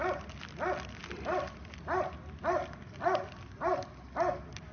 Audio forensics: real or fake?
real